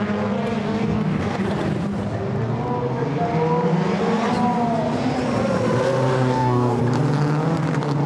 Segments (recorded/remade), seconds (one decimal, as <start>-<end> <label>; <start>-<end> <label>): 0.0-0.6 recorded; 0.6-1.4 remade; 1.4-6.1 recorded; 6.1-6.8 remade; 6.8-8.1 recorded